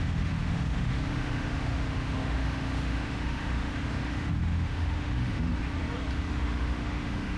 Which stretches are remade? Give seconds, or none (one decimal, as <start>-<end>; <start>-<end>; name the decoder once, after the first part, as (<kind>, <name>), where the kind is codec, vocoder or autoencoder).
0.0-5.5 (autoencoder, DAC-VAE); 6.3-7.4